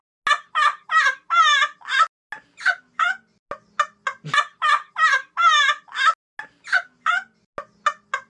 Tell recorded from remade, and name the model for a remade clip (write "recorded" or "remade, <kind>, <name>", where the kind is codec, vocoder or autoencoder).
recorded